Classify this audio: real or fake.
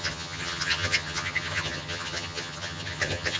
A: fake